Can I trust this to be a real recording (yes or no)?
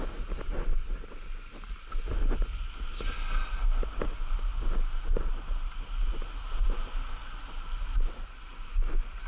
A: yes